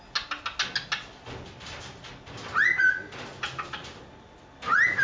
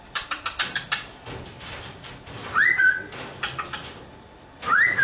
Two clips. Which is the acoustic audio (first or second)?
first